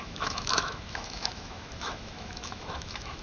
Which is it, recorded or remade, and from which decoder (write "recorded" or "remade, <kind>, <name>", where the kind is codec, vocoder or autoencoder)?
remade, autoencoder, DAC-VAE